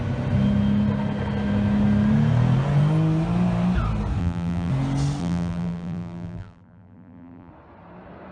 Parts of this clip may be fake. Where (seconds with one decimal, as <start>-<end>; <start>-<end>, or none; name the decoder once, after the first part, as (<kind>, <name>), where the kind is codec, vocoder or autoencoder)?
4.2-4.7 (vocoder, BigVGAN v2); 5.2-7.5